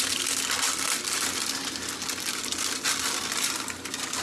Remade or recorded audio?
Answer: recorded